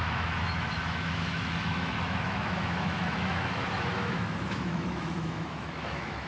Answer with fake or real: fake